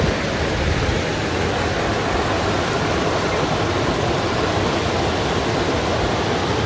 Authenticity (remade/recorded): recorded